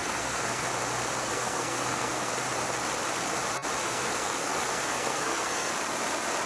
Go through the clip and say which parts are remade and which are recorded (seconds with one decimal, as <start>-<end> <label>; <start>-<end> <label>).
0.0-0.7 remade; 0.7-1.2 recorded; 1.2-2.3 remade; 2.3-3.8 recorded; 3.8-5.7 remade; 5.7-6.5 recorded